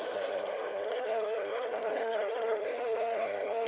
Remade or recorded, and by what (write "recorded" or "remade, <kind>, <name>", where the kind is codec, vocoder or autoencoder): remade, codec, SNAC